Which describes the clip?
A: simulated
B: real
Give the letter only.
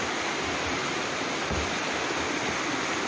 B